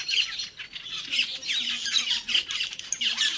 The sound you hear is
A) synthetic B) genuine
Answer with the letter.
B